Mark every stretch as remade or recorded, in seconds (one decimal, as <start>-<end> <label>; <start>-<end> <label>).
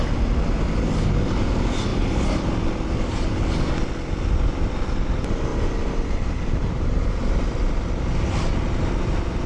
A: 0.0-5.5 recorded; 5.5-7.2 remade; 7.2-9.5 recorded